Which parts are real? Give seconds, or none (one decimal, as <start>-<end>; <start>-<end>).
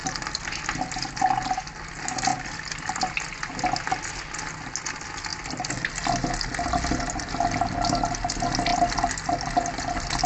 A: 0.0-10.3